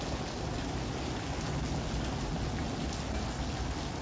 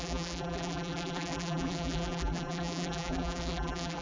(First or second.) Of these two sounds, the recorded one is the first